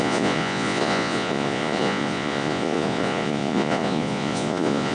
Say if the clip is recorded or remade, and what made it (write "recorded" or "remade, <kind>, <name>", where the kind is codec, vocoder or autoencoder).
remade, vocoder, Vocos